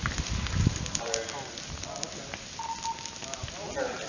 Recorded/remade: recorded